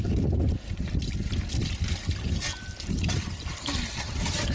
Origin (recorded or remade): recorded